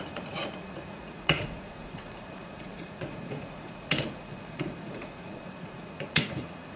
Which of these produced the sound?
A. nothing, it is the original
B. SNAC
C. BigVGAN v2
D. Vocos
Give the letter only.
D